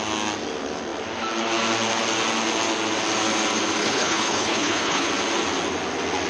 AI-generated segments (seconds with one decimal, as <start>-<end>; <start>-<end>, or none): 3.8-5.1